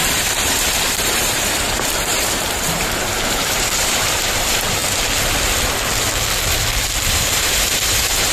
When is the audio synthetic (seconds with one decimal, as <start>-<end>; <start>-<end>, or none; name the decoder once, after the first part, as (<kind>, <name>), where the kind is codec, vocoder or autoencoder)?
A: 0.0-4.8 (vocoder, BigVGAN v2); 7.1-8.3